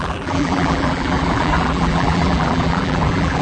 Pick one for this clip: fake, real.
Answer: fake